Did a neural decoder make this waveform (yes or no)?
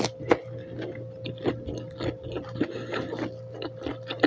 no